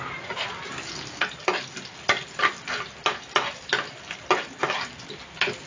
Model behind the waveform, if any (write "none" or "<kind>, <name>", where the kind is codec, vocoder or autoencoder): none